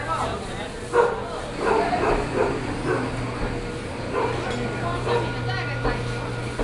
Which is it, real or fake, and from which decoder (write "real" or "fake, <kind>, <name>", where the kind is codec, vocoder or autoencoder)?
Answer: real